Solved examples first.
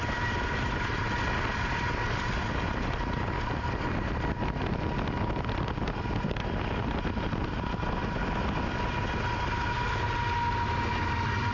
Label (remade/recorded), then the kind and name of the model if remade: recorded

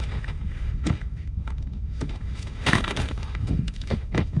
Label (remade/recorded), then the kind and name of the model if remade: remade, autoencoder, DAC-VAE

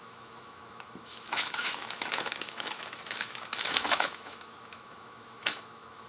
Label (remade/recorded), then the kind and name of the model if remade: remade, autoencoder, DAC-VAE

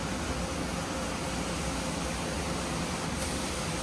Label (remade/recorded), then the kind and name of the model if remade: recorded